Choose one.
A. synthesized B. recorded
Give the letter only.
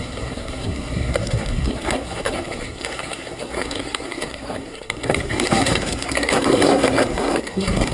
A